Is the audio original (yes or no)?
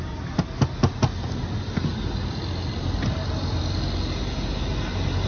yes